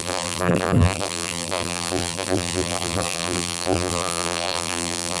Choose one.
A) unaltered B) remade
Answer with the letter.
B